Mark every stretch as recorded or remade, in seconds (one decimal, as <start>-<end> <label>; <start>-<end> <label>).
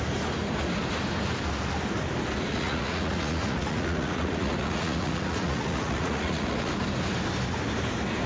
0.0-2.5 recorded; 2.5-6.7 remade; 6.7-8.3 recorded